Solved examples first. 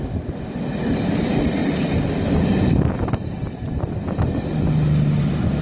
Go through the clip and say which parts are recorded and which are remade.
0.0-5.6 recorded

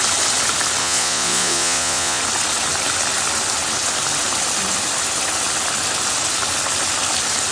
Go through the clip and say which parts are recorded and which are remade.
0.0-0.8 recorded; 0.8-2.2 remade; 2.2-7.5 recorded

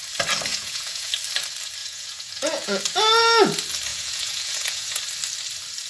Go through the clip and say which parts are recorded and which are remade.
0.0-0.5 recorded; 0.5-1.1 remade; 1.1-1.8 recorded; 1.8-2.8 remade; 2.8-3.9 recorded; 3.9-5.0 remade; 5.0-5.9 recorded

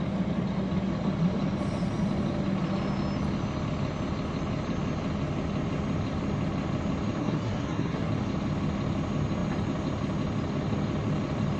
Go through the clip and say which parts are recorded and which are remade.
0.0-7.2 recorded; 7.2-8.1 remade; 8.1-11.6 recorded

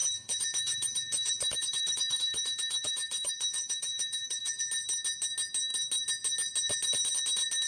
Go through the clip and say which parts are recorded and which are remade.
0.0-4.6 remade; 4.6-7.7 recorded